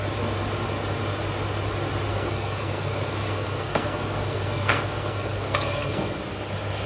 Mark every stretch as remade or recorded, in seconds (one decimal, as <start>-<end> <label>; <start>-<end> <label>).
0.0-2.1 recorded; 2.1-6.2 remade; 6.2-6.9 recorded